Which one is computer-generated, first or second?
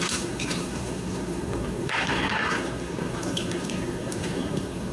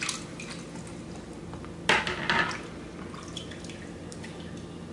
first